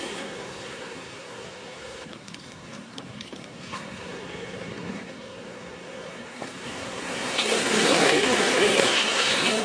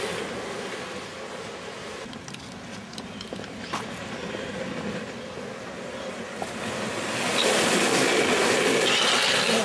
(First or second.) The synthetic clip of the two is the first